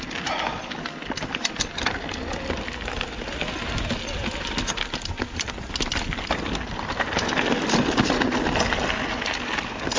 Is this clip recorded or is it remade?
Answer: recorded